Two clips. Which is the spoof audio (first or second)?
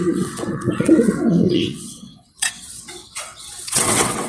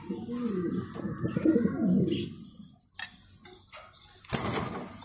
first